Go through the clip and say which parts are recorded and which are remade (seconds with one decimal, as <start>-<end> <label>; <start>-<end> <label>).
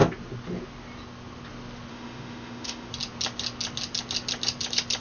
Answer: 0.0-1.9 recorded; 1.9-2.9 remade; 2.9-5.0 recorded